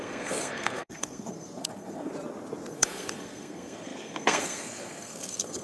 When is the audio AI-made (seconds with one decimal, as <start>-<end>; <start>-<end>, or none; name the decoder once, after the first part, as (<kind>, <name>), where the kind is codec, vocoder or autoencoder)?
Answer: 0.0-2.1 (codec, SNAC); 2.7-5.6